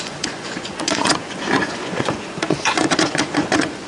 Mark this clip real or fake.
fake